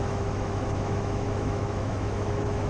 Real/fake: fake